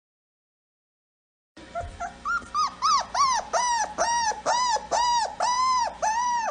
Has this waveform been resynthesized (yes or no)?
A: yes